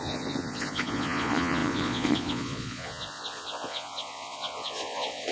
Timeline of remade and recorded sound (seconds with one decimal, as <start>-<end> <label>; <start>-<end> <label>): 0.0-5.3 remade